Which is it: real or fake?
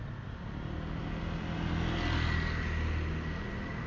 real